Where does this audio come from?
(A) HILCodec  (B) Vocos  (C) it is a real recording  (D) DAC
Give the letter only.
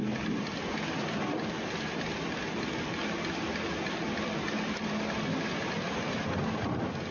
C